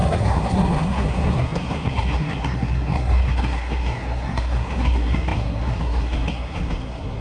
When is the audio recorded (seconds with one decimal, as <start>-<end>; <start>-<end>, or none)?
none